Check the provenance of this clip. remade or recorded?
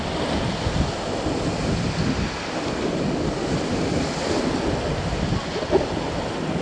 recorded